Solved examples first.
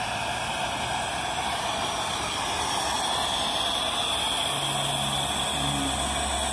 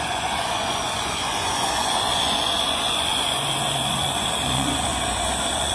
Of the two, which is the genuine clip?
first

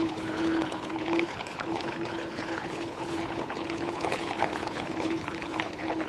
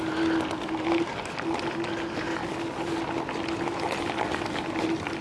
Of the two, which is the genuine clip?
second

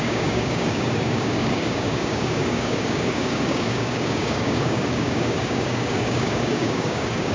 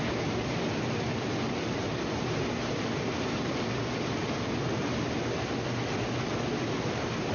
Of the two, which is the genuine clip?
second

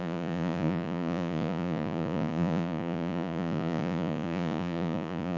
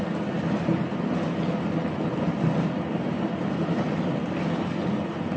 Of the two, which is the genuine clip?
second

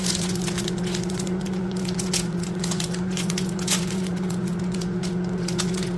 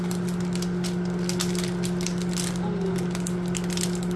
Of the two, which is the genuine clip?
second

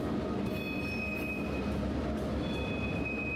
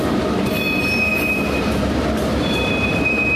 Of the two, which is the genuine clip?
first